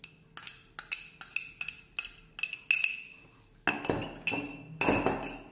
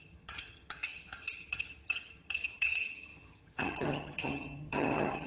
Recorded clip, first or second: first